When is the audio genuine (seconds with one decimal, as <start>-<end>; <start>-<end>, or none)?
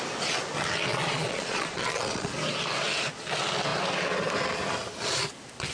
0.0-0.9; 2.3-5.7